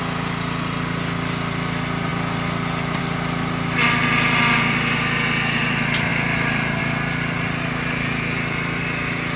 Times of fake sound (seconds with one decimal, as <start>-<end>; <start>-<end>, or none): none